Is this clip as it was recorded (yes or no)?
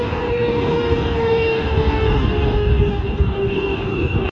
no